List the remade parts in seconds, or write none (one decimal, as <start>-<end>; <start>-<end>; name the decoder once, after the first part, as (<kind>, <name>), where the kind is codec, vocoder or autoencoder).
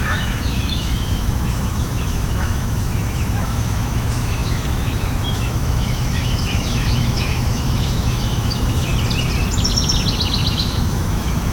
0.0-8.9 (autoencoder, DAC-VAE); 10.5-11.5